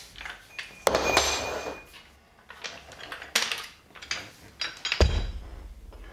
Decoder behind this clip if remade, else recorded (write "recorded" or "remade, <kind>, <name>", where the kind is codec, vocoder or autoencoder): recorded